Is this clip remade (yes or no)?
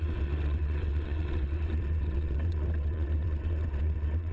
yes